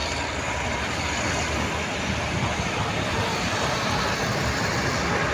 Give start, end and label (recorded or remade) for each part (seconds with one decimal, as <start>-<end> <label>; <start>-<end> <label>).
0.0-5.3 recorded